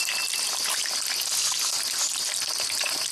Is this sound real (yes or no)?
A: yes